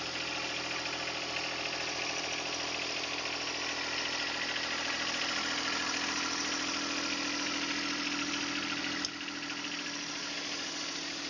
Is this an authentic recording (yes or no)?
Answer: yes